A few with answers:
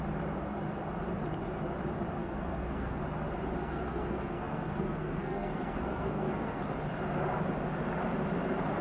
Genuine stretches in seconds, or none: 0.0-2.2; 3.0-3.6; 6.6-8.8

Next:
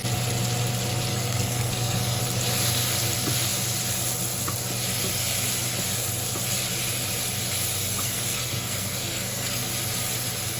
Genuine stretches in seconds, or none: 0.0-1.1; 2.2-7.8; 9.7-10.6

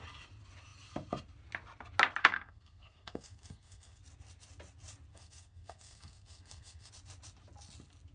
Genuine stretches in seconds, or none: 0.0-2.2; 4.0-5.1; 6.9-8.1

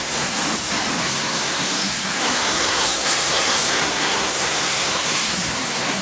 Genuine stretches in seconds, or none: 0.4-1.0